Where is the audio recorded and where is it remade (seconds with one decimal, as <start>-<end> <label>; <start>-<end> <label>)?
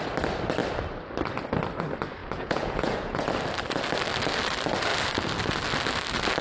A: 0.0-2.2 recorded; 2.2-3.3 remade; 3.3-6.4 recorded